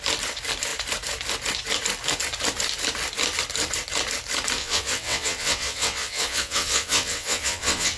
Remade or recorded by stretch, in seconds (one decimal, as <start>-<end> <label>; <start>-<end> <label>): 0.0-4.6 recorded; 4.6-8.0 remade